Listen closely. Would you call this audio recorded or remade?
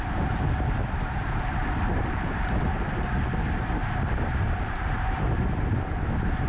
remade